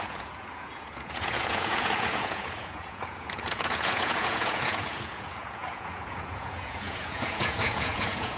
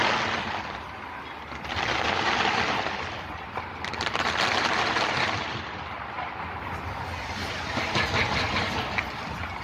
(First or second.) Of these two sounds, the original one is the second